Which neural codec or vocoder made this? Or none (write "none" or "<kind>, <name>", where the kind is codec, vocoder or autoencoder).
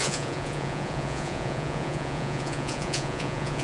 vocoder, Vocos